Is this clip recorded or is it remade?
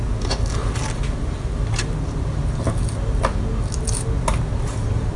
recorded